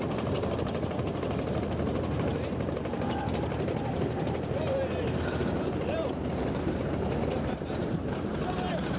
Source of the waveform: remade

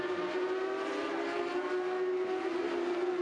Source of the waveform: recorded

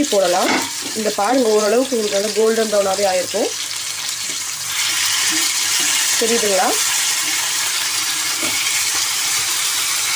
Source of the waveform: remade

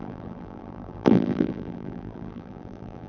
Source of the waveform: remade